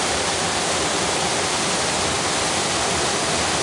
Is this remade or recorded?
recorded